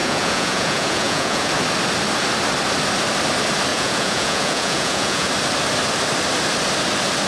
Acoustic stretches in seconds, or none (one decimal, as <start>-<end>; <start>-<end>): 1.5-3.7; 5.3-7.3